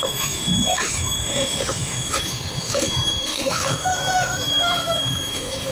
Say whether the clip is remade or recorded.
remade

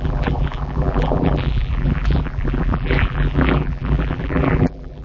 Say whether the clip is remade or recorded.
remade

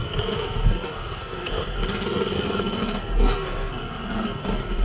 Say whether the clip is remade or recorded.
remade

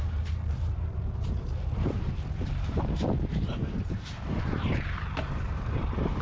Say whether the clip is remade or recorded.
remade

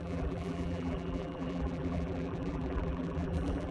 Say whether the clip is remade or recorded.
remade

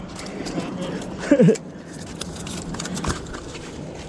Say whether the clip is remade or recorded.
recorded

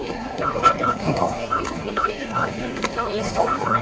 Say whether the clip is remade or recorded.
remade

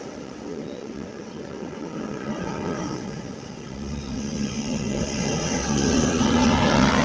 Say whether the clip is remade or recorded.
remade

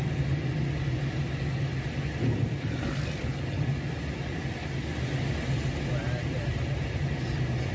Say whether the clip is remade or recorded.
recorded